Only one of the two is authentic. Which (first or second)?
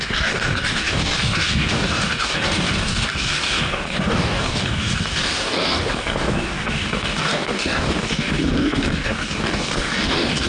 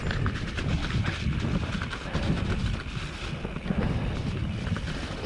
second